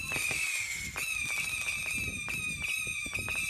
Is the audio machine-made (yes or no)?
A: no